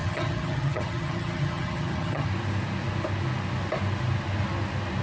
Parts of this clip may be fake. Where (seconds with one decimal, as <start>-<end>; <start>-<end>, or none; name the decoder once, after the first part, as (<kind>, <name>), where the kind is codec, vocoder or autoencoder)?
0.0-2.3 (vocoder, HiFi-GAN)